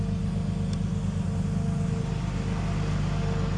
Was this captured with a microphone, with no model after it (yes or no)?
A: yes